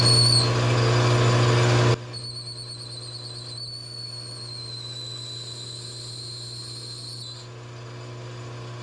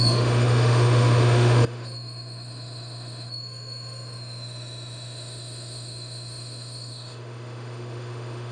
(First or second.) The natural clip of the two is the first